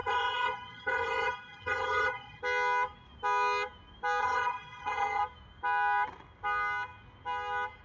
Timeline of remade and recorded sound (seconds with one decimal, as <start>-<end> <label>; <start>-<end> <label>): 0.0-2.4 remade; 2.4-4.2 recorded; 4.2-5.2 remade; 5.2-7.8 recorded